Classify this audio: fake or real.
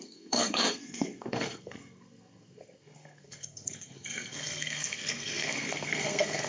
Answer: fake